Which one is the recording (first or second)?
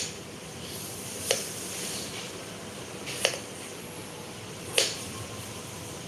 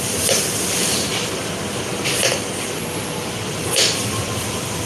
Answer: second